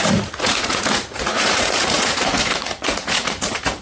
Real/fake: fake